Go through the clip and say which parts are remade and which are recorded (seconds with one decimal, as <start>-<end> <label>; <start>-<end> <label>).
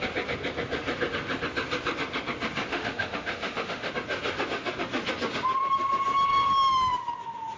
0.0-2.7 recorded; 2.7-3.9 remade; 3.9-7.6 recorded